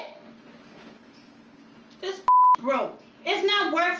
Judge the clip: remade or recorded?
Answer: recorded